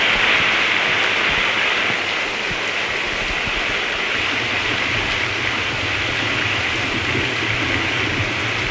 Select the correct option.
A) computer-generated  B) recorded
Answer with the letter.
B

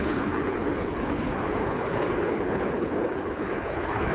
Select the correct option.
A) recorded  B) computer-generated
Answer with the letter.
B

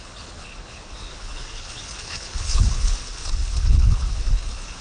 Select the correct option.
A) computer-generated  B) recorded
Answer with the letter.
A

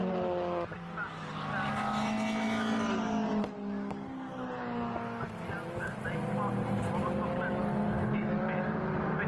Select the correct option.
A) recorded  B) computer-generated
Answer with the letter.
A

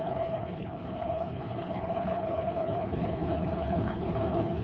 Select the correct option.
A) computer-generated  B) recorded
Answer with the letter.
A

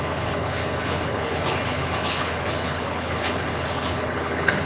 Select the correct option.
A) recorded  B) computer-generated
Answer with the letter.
B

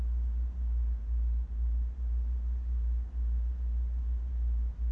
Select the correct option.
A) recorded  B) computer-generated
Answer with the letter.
A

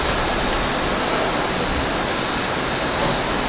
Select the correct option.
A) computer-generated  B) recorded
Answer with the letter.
B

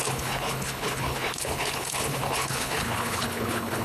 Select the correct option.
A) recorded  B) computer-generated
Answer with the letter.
B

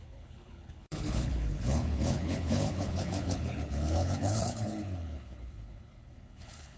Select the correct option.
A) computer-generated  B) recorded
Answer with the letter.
A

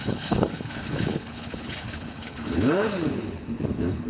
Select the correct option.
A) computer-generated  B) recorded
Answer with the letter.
A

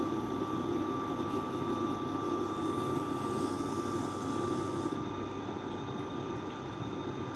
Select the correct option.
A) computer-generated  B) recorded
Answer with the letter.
B